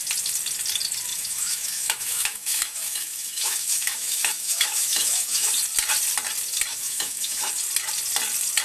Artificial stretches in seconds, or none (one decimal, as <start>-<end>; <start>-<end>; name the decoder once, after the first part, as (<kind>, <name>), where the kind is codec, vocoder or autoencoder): 1.1-5.5 (autoencoder, DAC-VAE); 6.7-7.5